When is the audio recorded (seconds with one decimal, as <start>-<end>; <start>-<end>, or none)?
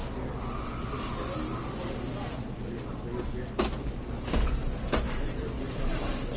0.0-6.4